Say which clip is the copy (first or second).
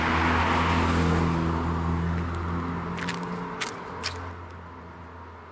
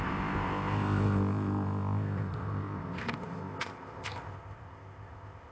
second